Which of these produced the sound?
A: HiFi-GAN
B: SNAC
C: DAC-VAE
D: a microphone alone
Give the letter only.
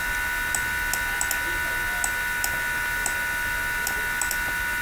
D